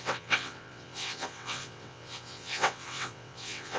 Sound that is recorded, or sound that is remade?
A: remade